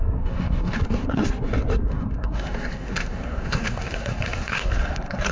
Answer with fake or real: fake